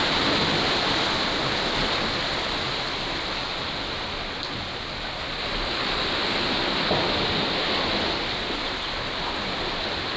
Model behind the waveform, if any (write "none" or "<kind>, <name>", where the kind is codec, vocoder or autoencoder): none